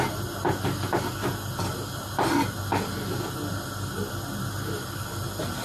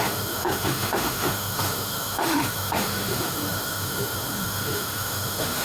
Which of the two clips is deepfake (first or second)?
second